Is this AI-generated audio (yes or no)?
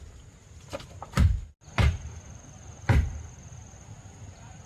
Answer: no